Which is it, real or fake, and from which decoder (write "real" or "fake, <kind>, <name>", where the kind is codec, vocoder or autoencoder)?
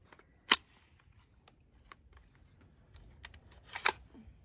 real